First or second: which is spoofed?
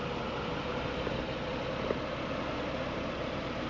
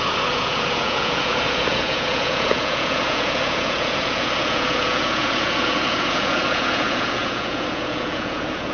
second